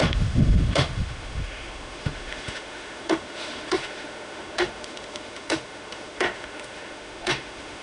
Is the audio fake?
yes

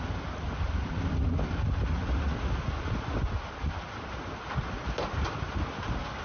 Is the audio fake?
no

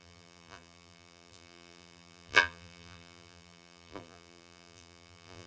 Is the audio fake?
yes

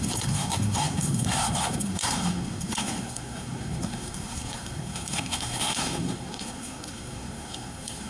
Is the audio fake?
yes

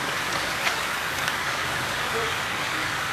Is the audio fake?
yes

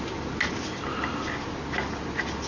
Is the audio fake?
no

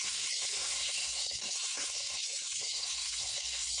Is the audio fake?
yes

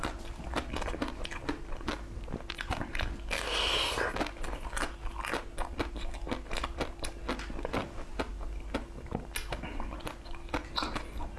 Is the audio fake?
no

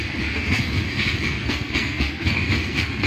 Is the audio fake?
yes